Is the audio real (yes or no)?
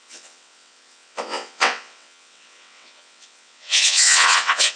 no